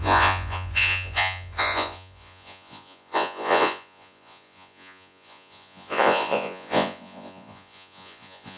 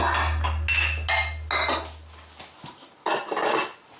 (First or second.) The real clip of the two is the second